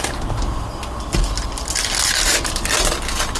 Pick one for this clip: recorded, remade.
recorded